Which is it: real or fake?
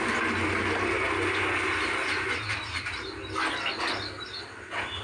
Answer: real